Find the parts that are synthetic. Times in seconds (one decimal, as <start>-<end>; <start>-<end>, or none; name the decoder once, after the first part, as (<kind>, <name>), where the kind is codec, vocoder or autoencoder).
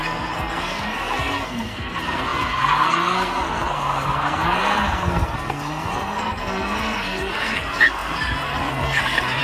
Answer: 0.0-9.4 (codec, SNAC)